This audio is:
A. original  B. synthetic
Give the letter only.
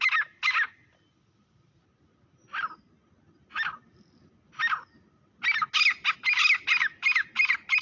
A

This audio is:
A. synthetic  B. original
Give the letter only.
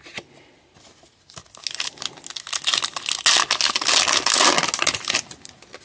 B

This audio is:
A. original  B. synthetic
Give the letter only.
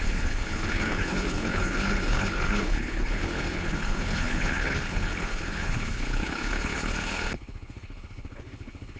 B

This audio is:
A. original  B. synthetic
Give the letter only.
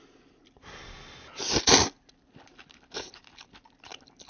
A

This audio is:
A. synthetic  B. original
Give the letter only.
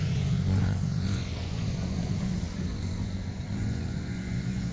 A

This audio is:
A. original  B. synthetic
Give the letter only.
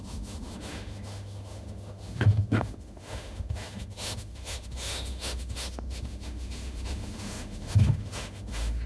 B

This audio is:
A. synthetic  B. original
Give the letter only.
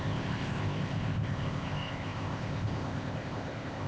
A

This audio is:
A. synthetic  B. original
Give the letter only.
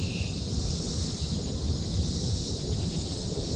A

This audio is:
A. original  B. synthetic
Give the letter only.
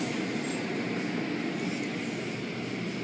A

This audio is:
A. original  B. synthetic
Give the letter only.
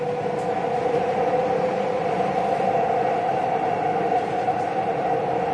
A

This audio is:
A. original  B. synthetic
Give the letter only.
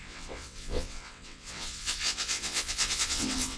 B